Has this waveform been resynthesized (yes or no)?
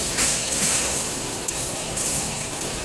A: yes